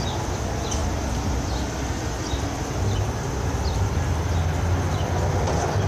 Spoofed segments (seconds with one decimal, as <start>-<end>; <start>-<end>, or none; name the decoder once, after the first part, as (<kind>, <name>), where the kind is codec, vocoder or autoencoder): none